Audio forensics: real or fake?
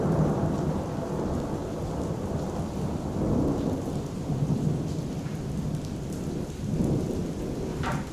fake